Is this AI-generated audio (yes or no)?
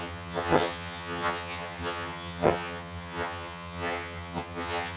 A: yes